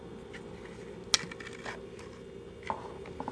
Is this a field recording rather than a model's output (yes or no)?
yes